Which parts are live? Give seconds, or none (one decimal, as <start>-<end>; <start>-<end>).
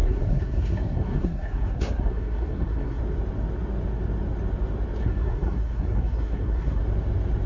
3.0-5.0; 6.8-7.5